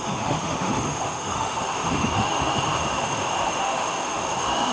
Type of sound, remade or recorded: remade